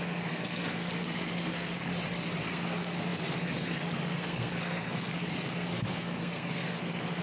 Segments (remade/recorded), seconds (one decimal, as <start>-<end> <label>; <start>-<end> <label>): 0.0-1.9 remade; 1.9-2.4 recorded; 2.4-7.2 remade